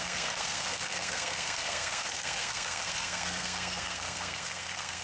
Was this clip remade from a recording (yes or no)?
yes